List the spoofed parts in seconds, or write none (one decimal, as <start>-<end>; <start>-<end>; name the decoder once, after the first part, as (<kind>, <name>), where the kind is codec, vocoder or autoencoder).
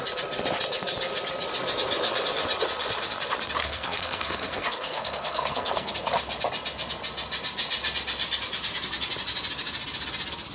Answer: 3.6-5.9 (codec, SNAC)